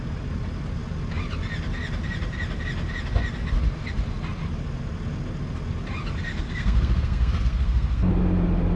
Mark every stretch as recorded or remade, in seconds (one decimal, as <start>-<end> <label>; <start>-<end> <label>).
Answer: 0.0-6.3 recorded; 6.3-8.1 remade; 8.1-8.8 recorded